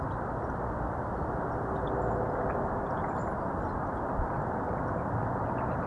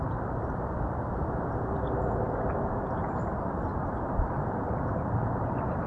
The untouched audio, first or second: first